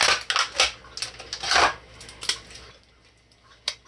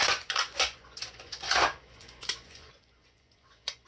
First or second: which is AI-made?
second